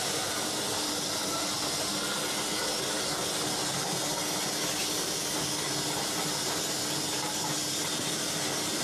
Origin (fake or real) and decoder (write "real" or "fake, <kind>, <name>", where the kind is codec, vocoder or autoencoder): real